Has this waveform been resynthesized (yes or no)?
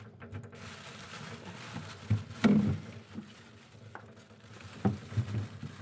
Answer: no